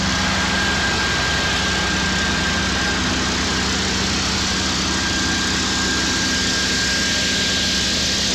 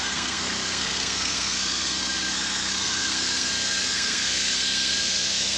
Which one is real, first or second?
first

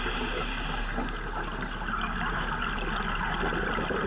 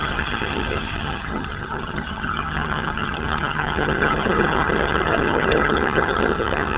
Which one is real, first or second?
first